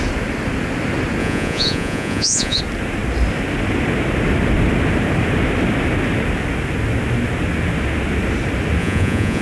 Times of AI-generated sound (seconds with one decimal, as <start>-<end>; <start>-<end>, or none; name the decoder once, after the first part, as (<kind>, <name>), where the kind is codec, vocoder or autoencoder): 1.2-2.6 (vocoder, Vocos); 8.8-9.4